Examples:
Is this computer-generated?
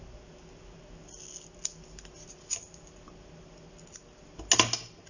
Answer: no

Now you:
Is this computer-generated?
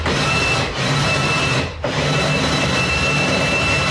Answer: yes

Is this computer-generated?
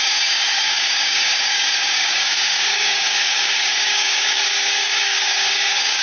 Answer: yes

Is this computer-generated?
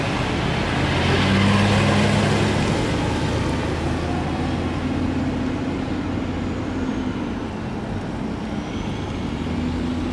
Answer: no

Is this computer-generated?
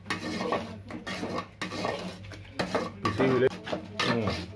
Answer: no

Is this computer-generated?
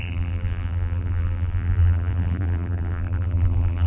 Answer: yes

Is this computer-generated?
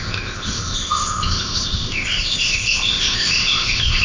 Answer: yes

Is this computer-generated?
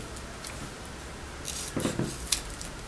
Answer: no